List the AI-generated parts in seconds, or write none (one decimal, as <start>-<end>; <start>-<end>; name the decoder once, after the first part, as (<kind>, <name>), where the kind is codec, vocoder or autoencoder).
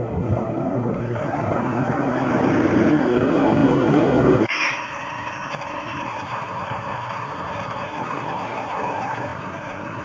0.0-2.3 (codec, SNAC); 2.9-10.0